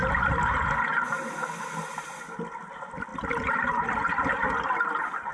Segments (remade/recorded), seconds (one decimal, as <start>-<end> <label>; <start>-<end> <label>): 0.0-5.3 recorded